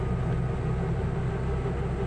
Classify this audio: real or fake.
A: real